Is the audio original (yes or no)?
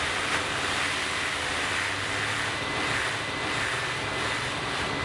no